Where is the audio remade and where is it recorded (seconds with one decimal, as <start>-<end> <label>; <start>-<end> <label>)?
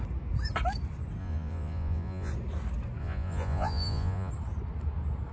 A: 0.0-1.2 recorded; 1.2-2.3 remade; 2.3-3.0 recorded; 3.0-4.3 remade; 4.3-5.3 recorded